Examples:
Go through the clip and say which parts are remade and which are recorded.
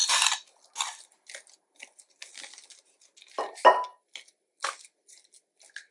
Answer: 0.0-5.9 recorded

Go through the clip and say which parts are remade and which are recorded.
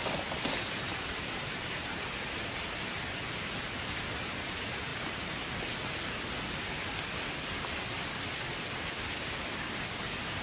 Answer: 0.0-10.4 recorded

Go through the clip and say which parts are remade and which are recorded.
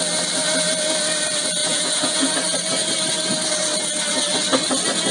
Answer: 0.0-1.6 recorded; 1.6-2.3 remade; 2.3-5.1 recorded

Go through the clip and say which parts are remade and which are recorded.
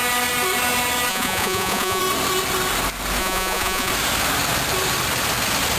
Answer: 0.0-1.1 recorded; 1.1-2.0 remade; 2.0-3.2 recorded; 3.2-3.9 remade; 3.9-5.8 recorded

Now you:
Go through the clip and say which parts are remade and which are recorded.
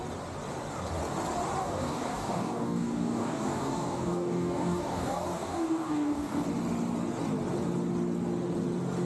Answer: 0.0-1.6 recorded; 1.6-6.4 remade; 6.4-9.0 recorded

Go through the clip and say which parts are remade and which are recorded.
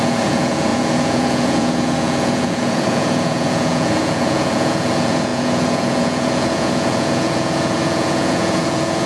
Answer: 0.0-9.1 remade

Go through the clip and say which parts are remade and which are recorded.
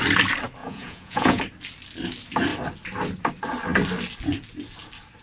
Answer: 0.0-0.6 recorded; 0.6-1.4 remade; 1.4-5.2 recorded